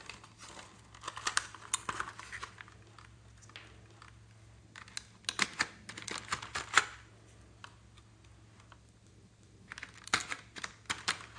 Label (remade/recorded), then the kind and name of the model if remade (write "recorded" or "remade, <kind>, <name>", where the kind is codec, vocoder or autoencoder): recorded